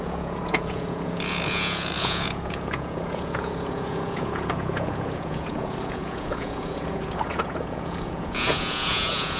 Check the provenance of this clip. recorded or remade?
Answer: remade